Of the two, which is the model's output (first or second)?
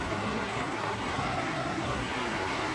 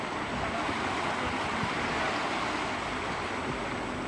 first